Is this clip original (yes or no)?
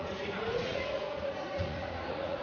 no